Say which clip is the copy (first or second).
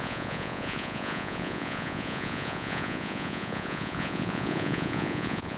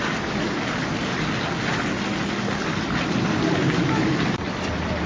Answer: first